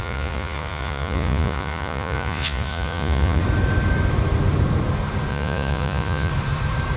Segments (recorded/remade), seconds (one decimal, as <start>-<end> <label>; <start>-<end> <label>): 0.0-3.4 remade; 3.4-5.3 recorded; 5.3-6.3 remade; 6.3-7.0 recorded